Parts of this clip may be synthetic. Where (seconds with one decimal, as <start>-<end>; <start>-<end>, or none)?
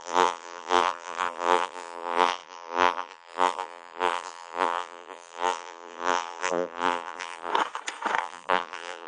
0.0-7.5; 8.2-9.1